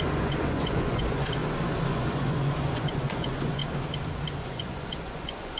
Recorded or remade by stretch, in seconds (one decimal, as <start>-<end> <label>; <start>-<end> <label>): 0.0-1.4 remade; 1.4-1.9 recorded; 1.9-3.6 remade; 3.6-4.4 recorded; 4.4-5.6 remade